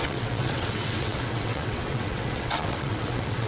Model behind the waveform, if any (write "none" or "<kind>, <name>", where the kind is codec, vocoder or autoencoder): vocoder, WaveNeXt